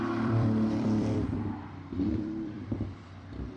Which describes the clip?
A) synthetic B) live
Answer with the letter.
A